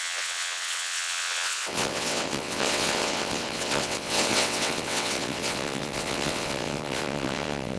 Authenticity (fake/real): fake